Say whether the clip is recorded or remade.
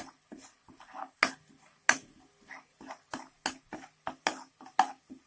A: recorded